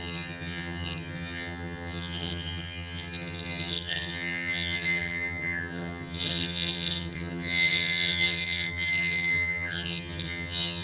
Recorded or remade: remade